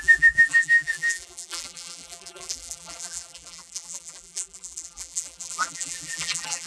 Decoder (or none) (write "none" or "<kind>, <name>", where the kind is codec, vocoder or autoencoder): vocoder, BigVGAN v2